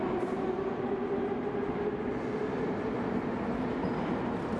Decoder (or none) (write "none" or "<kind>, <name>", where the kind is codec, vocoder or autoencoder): none